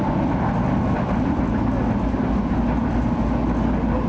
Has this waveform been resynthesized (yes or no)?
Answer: no